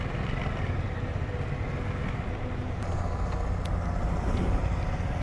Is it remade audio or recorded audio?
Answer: recorded